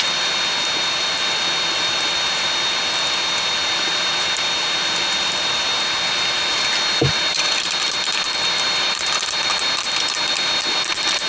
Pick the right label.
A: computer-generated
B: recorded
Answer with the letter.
A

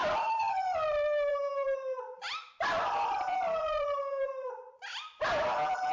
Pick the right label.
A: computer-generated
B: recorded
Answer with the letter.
A